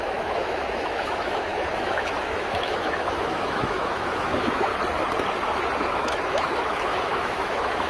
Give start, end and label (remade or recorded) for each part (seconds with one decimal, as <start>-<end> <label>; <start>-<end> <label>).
0.0-4.7 remade; 4.7-5.8 recorded; 5.8-7.9 remade